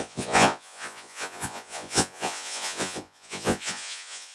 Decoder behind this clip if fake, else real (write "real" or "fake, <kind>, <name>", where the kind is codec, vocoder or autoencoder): fake, vocoder, Vocos